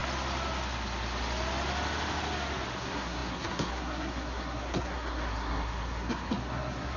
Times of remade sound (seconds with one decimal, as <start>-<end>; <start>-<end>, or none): 2.8-7.0